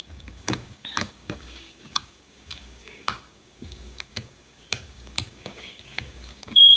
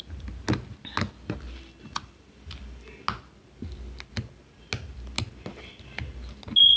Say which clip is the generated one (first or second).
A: first